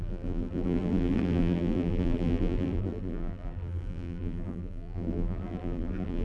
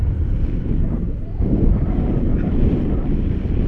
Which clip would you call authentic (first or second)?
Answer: second